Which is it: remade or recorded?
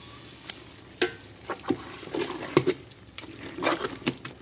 remade